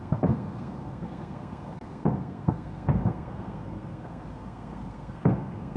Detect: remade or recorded remade